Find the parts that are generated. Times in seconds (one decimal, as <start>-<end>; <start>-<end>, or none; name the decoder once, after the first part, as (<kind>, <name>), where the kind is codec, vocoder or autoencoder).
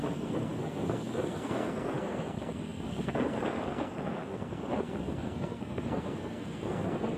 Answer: 0.0-7.2 (codec, SNAC)